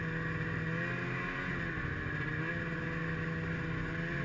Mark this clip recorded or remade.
recorded